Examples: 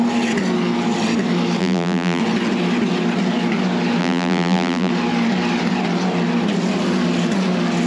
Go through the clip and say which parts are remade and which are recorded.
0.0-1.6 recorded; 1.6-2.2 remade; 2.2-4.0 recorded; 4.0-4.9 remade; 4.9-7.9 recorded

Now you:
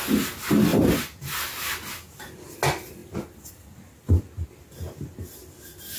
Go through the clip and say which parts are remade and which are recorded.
0.0-6.0 recorded

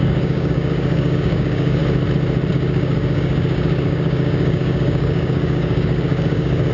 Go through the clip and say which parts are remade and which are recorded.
0.0-1.8 remade; 1.8-2.5 recorded; 2.5-6.7 remade

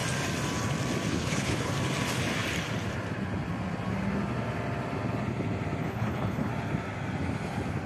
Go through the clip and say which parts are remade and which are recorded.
0.0-1.1 recorded; 1.1-1.7 remade; 1.7-5.8 recorded; 5.8-6.5 remade; 6.5-7.9 recorded

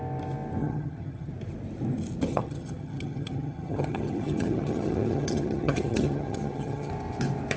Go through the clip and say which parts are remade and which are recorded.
0.0-0.6 recorded; 0.6-1.3 remade; 1.3-2.3 recorded; 2.3-6.9 remade; 6.9-7.6 recorded

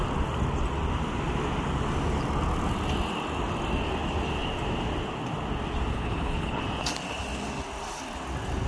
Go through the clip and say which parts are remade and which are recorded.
0.0-5.9 recorded; 5.9-6.6 remade; 6.6-8.7 recorded

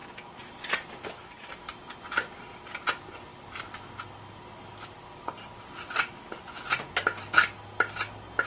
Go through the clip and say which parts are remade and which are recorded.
0.0-1.5 remade; 1.5-3.3 recorded; 3.3-6.5 remade; 6.5-8.5 recorded

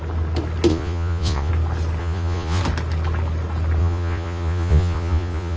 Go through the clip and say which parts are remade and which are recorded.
0.0-0.7 recorded; 0.7-1.5 remade; 1.5-2.0 recorded; 2.0-2.6 remade; 2.6-3.8 recorded; 3.8-5.6 remade